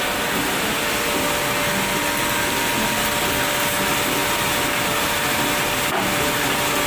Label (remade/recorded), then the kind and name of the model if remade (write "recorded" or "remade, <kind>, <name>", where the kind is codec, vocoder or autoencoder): recorded